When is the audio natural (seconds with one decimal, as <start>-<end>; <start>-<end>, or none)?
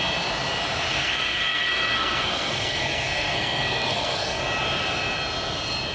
0.0-0.9; 4.4-5.9